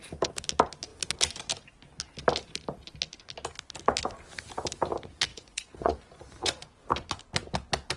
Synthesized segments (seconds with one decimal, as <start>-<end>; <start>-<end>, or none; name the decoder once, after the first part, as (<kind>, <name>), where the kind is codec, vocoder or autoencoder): 5.3-6.7 (vocoder, Vocos)